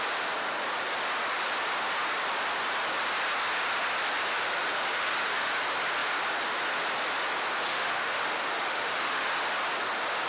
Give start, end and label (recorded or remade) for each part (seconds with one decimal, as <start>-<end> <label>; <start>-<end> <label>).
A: 0.0-4.9 recorded; 4.9-5.5 remade; 5.5-7.7 recorded; 7.7-9.3 remade; 9.3-10.3 recorded